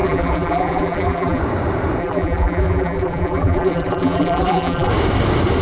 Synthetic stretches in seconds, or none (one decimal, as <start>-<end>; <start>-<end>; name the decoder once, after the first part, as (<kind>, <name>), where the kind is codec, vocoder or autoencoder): 0.0-1.4 (vocoder, BigVGAN v2); 2.0-4.9